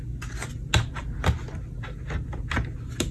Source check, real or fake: real